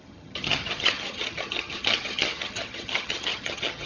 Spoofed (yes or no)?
yes